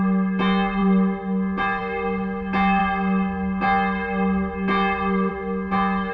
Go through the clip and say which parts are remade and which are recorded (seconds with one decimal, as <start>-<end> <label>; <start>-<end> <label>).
0.0-6.1 recorded